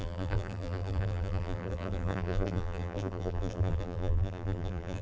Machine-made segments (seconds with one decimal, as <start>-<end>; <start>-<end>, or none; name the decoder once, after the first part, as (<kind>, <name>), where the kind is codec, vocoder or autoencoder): 0.0-5.0 (vocoder, BigVGAN v2)